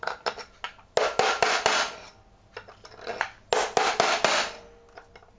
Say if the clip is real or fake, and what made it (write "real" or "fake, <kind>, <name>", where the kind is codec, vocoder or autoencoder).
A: real